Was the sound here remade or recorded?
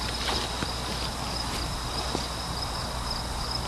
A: recorded